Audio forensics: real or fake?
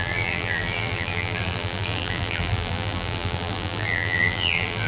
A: fake